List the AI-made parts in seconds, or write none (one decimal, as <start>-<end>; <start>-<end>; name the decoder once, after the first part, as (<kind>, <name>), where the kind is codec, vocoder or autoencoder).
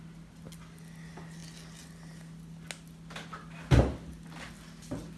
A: none